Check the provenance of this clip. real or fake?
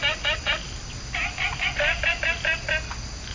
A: real